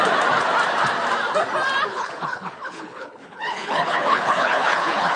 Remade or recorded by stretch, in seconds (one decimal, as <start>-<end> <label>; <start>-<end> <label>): 0.0-1.9 recorded; 1.9-5.2 remade